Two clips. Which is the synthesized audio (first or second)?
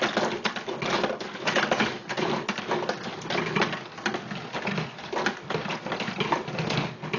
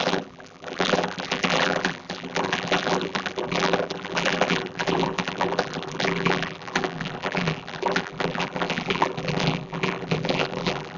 second